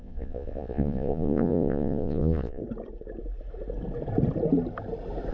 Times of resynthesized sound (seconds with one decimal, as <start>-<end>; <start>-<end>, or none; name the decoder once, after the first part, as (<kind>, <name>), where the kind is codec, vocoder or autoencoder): 0.0-2.6 (vocoder, Vocos)